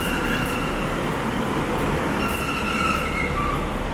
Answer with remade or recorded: recorded